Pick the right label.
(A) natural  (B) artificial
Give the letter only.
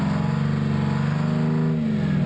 A